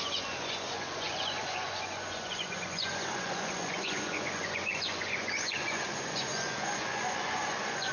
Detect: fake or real fake